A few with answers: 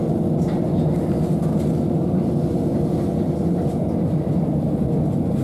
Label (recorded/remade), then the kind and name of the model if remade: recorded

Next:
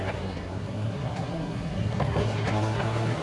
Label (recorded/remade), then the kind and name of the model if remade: remade, codec, SNAC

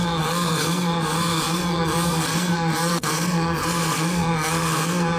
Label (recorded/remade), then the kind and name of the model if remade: remade, codec, SNAC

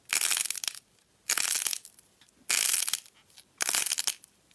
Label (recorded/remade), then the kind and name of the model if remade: recorded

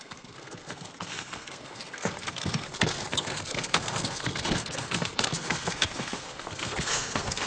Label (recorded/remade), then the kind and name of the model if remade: remade, codec, SNAC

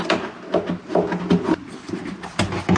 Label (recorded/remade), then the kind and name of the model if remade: recorded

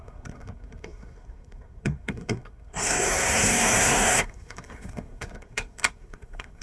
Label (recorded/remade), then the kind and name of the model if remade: remade, codec, SNAC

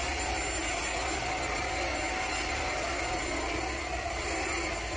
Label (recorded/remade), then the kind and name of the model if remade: recorded